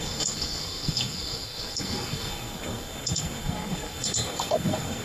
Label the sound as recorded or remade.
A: remade